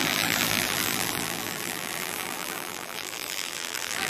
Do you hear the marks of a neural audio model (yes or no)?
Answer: yes